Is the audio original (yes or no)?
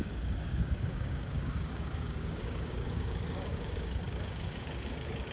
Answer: no